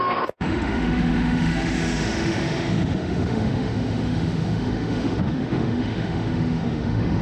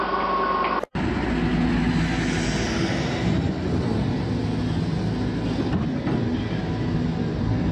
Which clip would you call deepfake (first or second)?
first